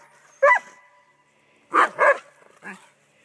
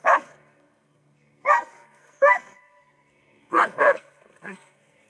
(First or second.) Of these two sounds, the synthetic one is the second